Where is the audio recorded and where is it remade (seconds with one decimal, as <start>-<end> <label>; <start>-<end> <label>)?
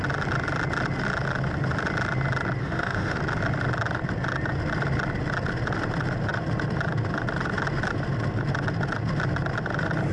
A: 0.0-2.6 recorded; 2.6-3.2 remade; 3.2-10.1 recorded